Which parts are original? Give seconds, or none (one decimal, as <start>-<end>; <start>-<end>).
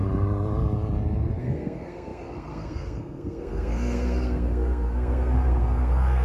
0.0-1.4